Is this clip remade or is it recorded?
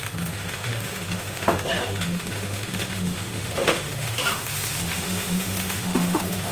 remade